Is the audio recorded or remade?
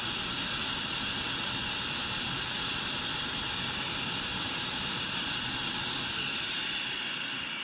recorded